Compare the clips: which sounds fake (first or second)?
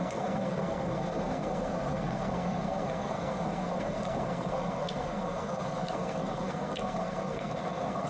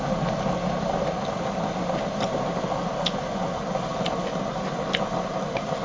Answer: first